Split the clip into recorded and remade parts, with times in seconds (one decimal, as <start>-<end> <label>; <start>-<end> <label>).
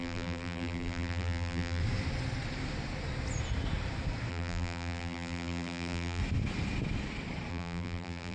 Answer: 0.0-1.8 remade; 1.8-4.3 recorded; 4.3-6.2 remade; 6.2-7.5 recorded; 7.5-8.3 remade